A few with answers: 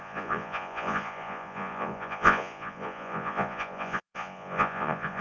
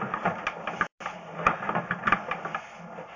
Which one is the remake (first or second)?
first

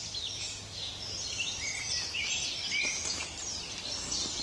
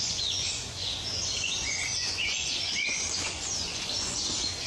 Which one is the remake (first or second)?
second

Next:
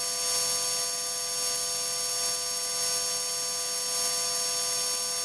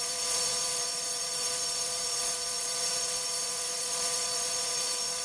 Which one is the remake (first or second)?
second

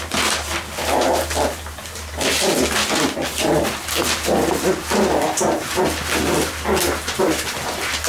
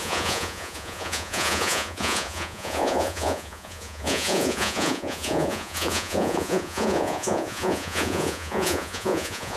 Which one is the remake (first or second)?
second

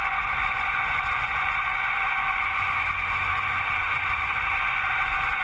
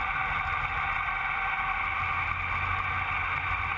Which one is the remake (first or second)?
first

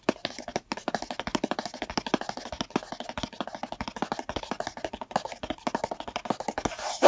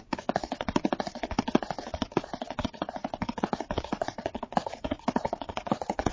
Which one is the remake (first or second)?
second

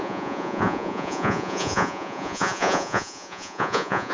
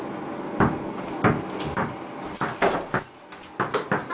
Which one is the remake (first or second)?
first